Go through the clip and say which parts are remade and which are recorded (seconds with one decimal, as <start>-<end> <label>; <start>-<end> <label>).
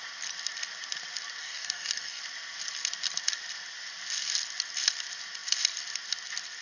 0.0-1.4 recorded; 1.4-2.2 remade; 2.2-6.6 recorded